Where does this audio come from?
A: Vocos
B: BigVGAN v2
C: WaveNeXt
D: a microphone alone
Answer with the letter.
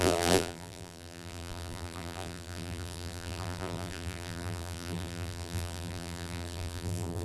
B